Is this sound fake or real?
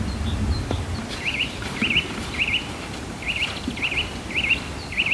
fake